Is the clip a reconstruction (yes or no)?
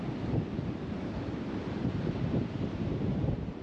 yes